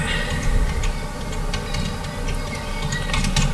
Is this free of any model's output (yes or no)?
yes